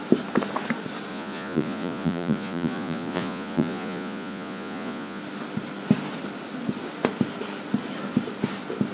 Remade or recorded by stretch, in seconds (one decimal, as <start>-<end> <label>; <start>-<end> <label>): 0.0-1.1 recorded; 1.1-5.2 remade; 5.2-8.9 recorded